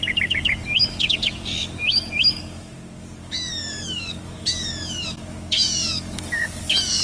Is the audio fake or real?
fake